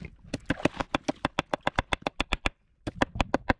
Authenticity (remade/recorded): recorded